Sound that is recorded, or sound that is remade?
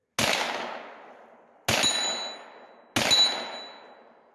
recorded